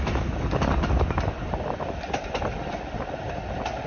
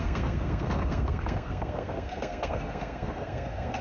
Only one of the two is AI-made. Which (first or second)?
second